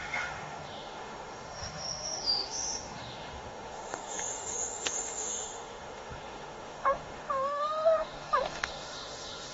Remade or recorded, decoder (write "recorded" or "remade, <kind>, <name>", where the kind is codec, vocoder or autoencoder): remade, autoencoder, DAC-VAE